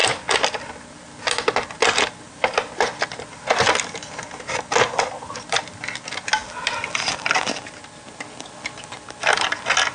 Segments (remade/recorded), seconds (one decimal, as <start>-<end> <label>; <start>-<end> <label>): 0.0-9.9 recorded